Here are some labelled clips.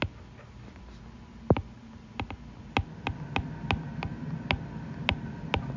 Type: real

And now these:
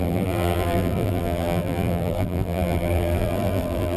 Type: fake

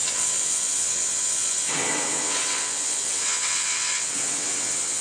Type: fake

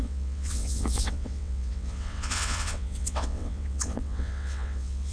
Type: fake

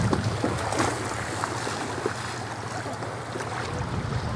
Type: real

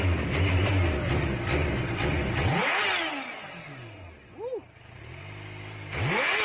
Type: real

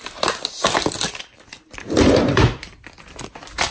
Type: real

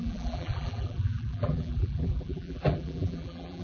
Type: fake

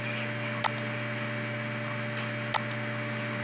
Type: real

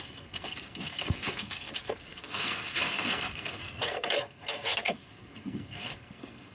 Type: fake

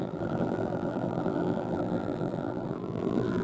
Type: fake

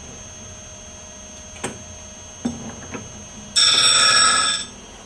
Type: real